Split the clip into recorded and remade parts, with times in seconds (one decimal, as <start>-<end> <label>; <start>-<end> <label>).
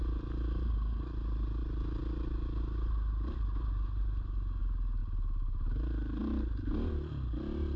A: 0.0-7.8 recorded